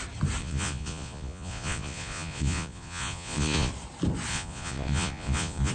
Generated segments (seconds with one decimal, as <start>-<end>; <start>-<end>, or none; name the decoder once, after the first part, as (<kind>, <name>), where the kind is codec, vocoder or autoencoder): 0.4-3.7 (vocoder, Vocos); 4.3-5.7